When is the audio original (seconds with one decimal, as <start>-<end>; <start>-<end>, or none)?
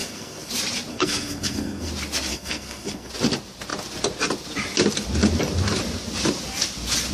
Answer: 0.5-0.9; 1.9-2.3; 3.1-7.1